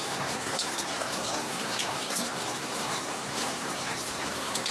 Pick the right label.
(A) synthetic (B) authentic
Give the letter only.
A